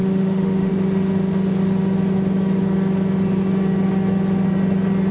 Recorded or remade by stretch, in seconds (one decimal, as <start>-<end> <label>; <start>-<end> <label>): 0.0-0.7 remade; 0.7-5.1 recorded